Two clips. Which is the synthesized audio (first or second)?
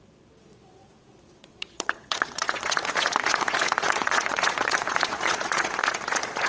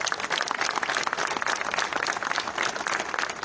first